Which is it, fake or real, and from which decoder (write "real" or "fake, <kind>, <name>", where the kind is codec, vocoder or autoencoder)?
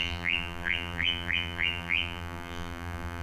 fake, vocoder, BigVGAN v2